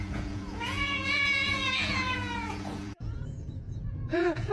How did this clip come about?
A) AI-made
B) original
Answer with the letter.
A